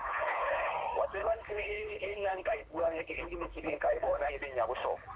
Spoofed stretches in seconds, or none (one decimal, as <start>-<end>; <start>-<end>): 0.0-0.7; 1.2-4.3